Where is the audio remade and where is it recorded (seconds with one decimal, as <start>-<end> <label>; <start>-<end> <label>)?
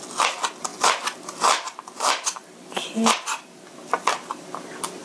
0.0-5.0 recorded